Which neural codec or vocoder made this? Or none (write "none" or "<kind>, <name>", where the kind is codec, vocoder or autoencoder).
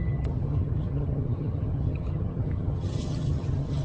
vocoder, HiFi-GAN